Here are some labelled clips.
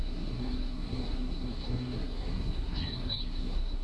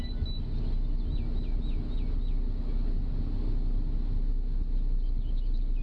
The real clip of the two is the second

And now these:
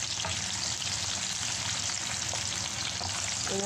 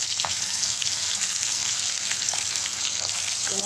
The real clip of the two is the first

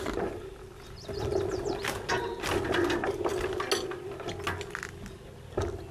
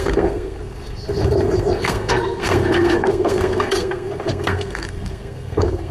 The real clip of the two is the first